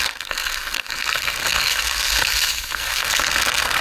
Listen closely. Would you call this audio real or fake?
fake